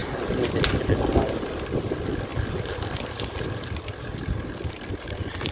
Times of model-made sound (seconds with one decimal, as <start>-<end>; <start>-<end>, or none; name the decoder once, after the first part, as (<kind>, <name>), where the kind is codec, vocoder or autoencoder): 0.7-5.5 (vocoder, BigVGAN v2)